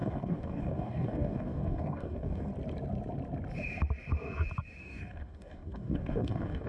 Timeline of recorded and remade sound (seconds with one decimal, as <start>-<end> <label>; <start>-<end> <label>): 0.0-2.5 remade; 2.5-4.8 recorded; 4.8-6.7 remade